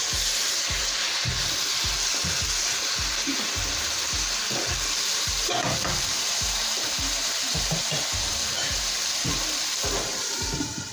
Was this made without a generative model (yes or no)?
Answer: no